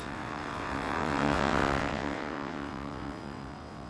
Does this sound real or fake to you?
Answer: fake